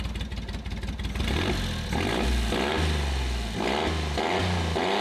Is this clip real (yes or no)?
yes